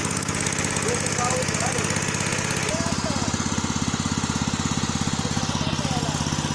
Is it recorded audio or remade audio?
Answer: recorded